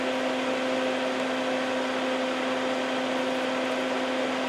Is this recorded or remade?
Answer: recorded